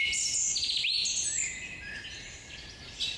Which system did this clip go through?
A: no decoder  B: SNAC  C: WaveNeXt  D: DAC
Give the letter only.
A